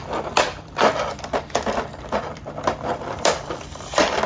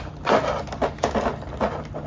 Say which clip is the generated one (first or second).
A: first